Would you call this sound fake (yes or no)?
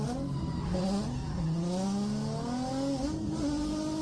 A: no